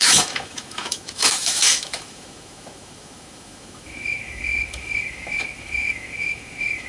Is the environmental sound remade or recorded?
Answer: remade